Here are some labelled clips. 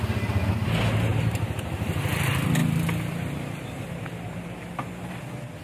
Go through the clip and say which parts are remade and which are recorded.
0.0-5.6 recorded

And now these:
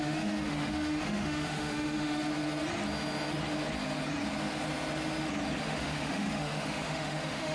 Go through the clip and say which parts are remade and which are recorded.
0.0-2.3 remade; 2.3-5.6 recorded; 5.6-7.5 remade

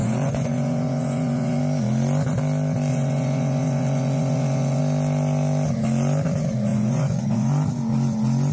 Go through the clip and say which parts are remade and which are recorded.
0.0-1.6 remade; 1.6-2.9 recorded; 2.9-4.8 remade; 4.8-6.7 recorded; 6.7-7.5 remade; 7.5-8.5 recorded

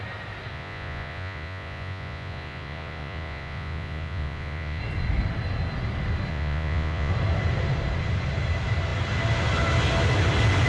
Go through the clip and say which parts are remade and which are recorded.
0.0-0.5 recorded; 0.5-4.8 remade; 4.8-6.3 recorded; 6.3-7.1 remade; 7.1-10.7 recorded

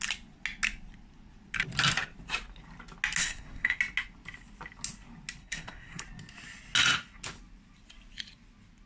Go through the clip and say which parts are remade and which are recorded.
0.0-3.2 recorded; 3.2-3.8 remade; 3.8-5.4 recorded; 5.4-6.0 remade; 6.0-8.9 recorded